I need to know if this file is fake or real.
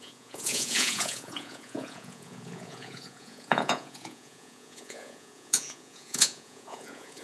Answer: fake